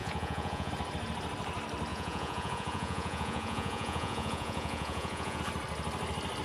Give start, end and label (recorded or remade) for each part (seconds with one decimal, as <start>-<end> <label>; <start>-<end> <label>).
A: 0.0-0.7 remade; 0.7-1.9 recorded; 1.9-5.4 remade; 5.4-6.4 recorded